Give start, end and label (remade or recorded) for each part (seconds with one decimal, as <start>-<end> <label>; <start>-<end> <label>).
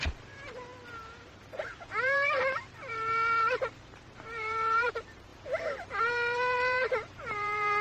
0.0-0.7 remade; 0.7-1.5 recorded; 1.5-5.3 remade; 5.3-6.0 recorded; 6.0-7.8 remade